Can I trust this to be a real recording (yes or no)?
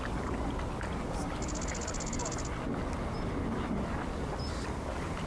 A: yes